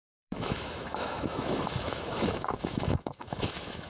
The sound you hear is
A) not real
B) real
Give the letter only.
A